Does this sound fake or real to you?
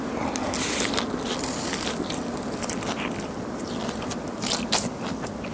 real